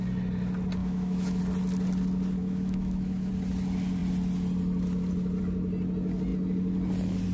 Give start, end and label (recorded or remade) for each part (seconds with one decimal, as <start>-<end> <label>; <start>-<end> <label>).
0.0-0.8 recorded; 0.8-1.4 remade; 1.4-2.4 recorded; 2.4-3.3 remade; 3.3-7.3 recorded